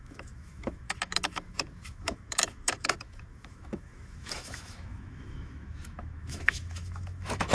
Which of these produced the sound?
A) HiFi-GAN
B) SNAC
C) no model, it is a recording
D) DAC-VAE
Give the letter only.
D